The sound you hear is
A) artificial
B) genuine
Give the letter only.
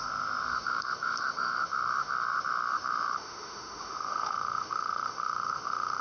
A